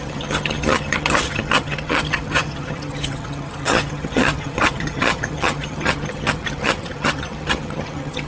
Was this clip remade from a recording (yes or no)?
yes